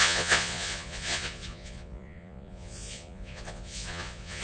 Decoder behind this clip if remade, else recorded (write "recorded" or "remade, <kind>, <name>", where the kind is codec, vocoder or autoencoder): remade, vocoder, Vocos